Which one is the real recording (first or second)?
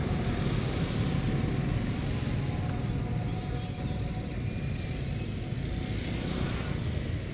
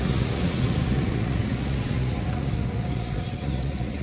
first